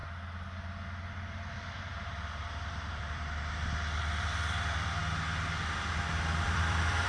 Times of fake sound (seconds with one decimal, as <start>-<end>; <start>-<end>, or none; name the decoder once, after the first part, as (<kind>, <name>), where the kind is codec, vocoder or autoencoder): 1.1-5.0 (vocoder, BigVGAN v2); 6.1-7.1